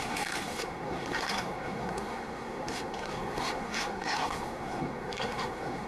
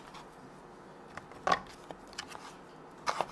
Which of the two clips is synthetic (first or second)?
first